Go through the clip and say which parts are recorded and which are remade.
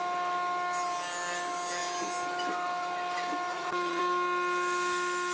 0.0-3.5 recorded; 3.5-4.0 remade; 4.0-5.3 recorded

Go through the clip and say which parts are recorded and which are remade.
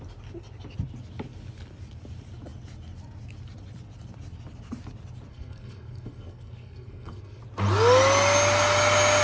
0.0-5.3 recorded; 5.3-7.4 remade; 7.4-9.2 recorded